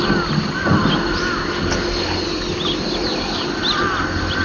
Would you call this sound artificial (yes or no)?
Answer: no